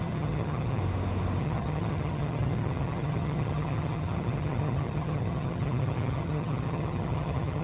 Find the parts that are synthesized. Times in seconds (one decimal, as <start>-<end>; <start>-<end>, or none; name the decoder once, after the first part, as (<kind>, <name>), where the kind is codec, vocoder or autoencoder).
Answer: 0.0-0.8 (vocoder, HiFi-GAN); 1.4-7.6